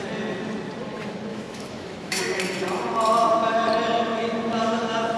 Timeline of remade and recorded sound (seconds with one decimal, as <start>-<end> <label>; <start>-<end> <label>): 0.0-1.3 recorded; 1.3-2.2 remade; 2.2-5.2 recorded